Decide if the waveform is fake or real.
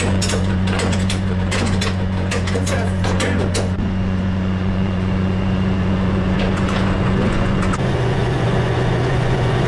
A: fake